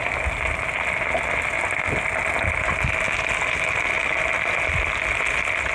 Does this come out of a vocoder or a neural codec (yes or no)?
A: no